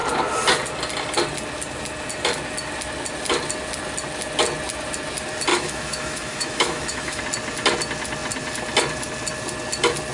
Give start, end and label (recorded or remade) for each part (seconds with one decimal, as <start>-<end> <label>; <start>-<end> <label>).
0.0-5.5 recorded; 5.5-7.2 remade; 7.2-10.1 recorded